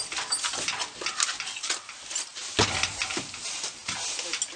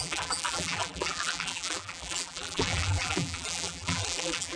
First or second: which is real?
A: first